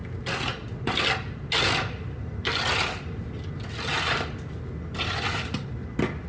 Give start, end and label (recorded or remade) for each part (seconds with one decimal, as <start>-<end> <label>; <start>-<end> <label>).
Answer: 0.0-6.3 recorded